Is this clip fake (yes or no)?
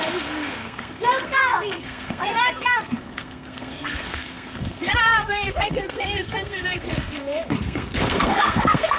yes